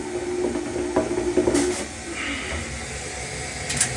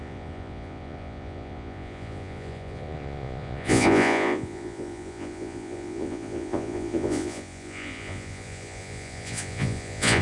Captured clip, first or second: first